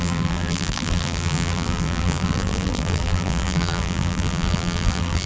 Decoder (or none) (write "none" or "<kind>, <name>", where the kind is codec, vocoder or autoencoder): vocoder, BigVGAN v2